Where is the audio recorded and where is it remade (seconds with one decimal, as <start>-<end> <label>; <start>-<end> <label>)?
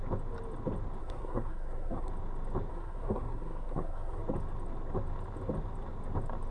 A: 0.0-1.0 recorded; 1.0-2.1 remade; 2.1-2.7 recorded; 2.7-4.2 remade; 4.2-6.5 recorded